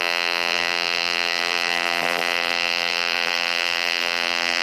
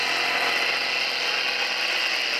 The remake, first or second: first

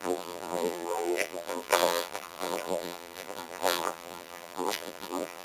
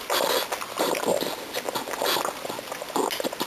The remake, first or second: first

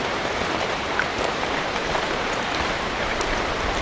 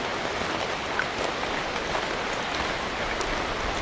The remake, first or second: first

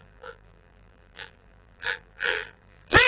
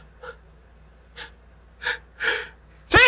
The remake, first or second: first